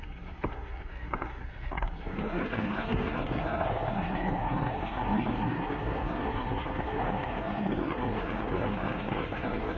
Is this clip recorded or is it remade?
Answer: remade